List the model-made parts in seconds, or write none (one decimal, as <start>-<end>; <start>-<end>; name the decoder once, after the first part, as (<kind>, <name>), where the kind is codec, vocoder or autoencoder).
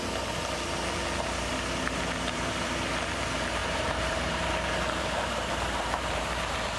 1.5-2.7 (vocoder, BigVGAN v2); 3.6-6.3